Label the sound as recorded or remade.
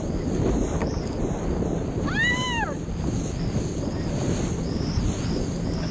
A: recorded